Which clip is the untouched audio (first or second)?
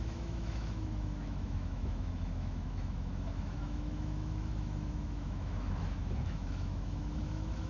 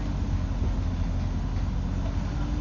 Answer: second